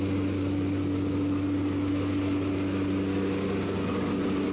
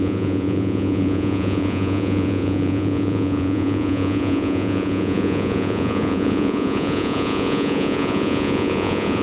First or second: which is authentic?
first